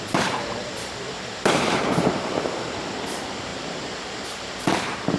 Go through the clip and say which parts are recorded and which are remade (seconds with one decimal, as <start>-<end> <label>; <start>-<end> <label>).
0.0-5.2 remade